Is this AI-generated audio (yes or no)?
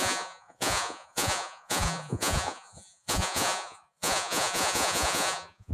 yes